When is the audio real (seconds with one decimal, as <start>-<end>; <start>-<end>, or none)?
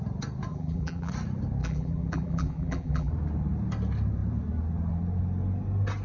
0.0-0.5; 1.1-1.6; 3.1-6.0